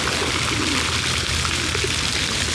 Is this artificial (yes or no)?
no